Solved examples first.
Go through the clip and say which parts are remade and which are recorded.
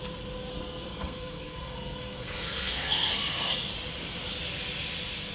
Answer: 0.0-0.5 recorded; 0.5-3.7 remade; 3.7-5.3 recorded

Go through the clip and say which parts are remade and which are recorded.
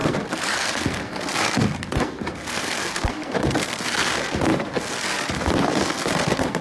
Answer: 0.0-6.6 remade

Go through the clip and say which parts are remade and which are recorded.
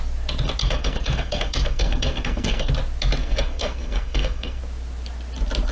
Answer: 0.0-0.6 recorded; 0.6-2.7 remade; 2.7-3.2 recorded; 3.2-4.6 remade; 4.6-5.7 recorded